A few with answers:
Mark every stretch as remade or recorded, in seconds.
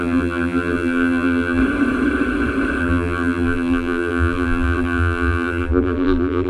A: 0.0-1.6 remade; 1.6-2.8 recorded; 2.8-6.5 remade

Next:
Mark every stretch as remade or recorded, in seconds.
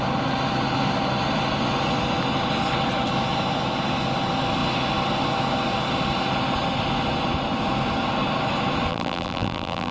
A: 0.0-8.9 recorded; 8.9-9.9 remade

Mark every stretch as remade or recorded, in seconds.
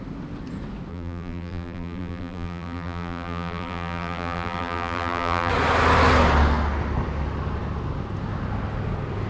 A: 0.0-0.9 recorded; 0.9-5.5 remade; 5.5-9.3 recorded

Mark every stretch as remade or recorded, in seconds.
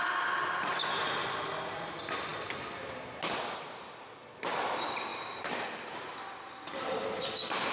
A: 0.0-5.1 recorded; 5.1-7.3 remade; 7.3-7.7 recorded